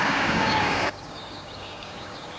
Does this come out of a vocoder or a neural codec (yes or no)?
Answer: yes